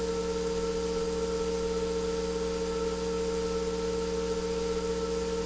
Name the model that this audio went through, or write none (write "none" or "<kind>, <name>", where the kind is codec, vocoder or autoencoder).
none